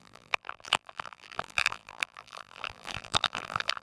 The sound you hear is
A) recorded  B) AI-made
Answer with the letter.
B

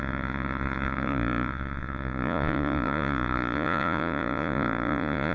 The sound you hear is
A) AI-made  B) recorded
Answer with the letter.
A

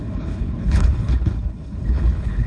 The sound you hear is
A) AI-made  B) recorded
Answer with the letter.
A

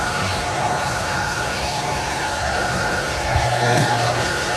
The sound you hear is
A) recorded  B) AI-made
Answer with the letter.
B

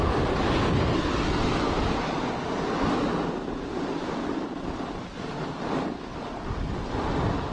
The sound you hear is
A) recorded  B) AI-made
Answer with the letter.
A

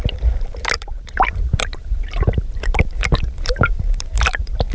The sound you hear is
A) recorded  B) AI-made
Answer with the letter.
B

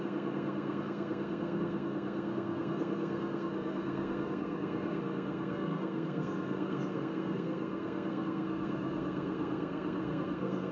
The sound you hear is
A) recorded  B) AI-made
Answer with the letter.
B